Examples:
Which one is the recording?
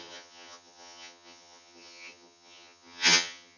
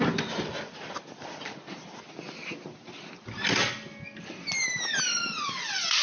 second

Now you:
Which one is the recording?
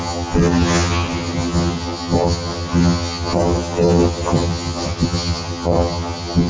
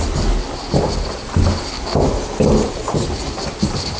second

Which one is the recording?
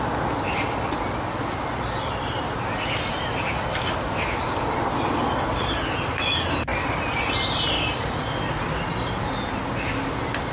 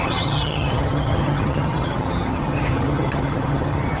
first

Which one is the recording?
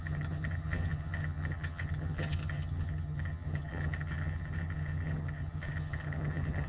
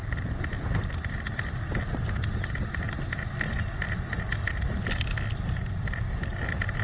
second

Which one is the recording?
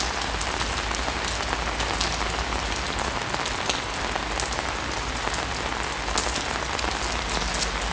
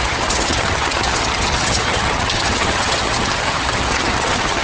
first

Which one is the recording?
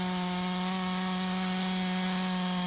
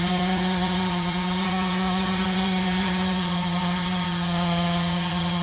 first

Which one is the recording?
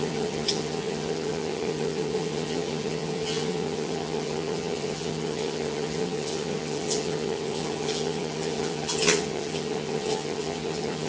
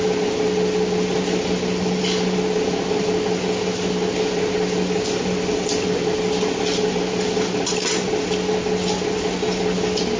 second